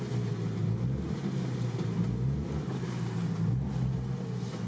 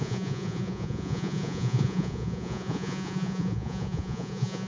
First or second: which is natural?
first